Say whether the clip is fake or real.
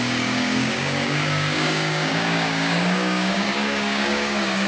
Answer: fake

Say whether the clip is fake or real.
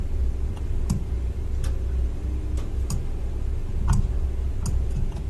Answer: real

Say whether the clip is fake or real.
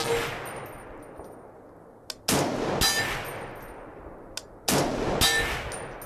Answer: real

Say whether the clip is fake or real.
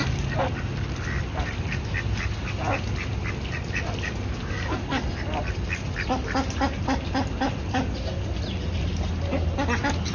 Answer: real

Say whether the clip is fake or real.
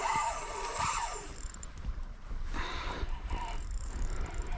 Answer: fake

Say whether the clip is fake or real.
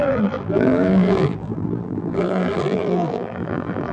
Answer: fake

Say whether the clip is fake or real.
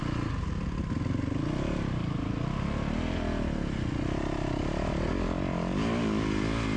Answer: real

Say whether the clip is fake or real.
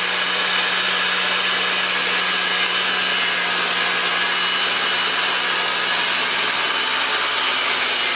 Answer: real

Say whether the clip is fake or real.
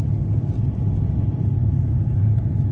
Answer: real